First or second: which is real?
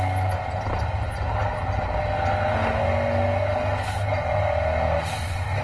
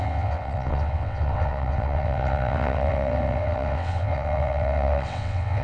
first